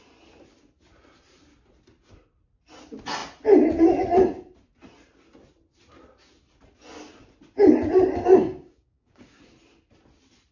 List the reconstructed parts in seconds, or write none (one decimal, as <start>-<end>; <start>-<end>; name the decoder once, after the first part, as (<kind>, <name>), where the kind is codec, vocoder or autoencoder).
8.4-9.4 (codec, DAC)

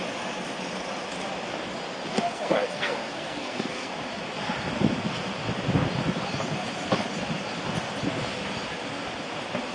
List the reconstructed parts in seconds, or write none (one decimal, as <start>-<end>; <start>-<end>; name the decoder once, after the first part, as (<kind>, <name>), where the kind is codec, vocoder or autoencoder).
2.3-3.9 (codec, SNAC)

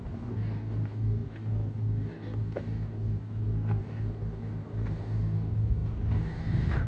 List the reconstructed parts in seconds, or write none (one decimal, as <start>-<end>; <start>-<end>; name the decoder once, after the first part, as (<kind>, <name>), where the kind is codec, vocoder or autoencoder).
0.0-6.9 (codec, DAC)

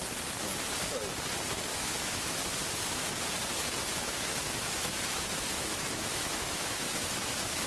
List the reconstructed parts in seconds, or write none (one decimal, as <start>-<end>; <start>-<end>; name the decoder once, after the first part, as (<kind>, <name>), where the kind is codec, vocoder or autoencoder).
1.7-2.4 (autoencoder, DAC-VAE); 3.8-7.3

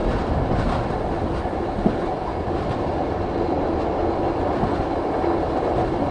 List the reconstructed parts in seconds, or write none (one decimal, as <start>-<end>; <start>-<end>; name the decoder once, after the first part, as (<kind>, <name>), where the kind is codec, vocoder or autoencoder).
none

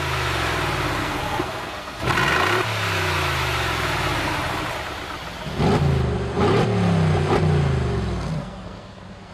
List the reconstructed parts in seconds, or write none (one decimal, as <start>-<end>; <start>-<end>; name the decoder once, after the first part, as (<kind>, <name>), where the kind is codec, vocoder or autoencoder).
1.0-2.0 (codec, SNAC); 8.4-9.3

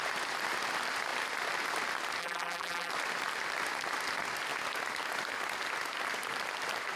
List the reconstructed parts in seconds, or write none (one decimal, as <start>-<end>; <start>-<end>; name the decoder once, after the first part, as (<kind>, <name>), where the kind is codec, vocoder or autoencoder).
2.2-2.9 (vocoder, BigVGAN v2)

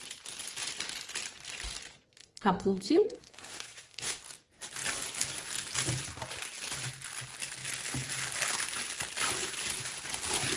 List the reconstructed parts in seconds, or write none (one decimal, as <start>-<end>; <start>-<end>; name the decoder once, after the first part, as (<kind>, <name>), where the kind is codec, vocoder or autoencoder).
2.2-4.2 (codec, SNAC)